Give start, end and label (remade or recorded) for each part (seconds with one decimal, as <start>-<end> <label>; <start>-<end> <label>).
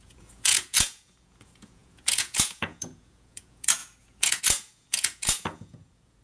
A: 0.0-6.2 remade